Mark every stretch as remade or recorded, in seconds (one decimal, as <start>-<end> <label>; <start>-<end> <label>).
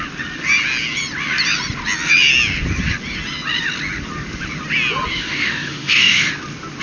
0.0-5.1 recorded; 5.1-6.3 remade; 6.3-6.8 recorded